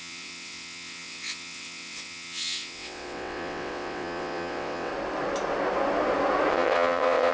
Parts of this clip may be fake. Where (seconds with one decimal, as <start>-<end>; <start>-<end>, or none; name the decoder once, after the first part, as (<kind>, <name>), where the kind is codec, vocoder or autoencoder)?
0.0-4.9 (vocoder, WaveNeXt); 6.5-7.3